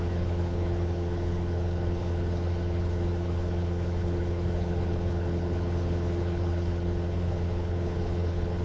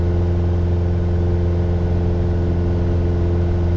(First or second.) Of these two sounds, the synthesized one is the first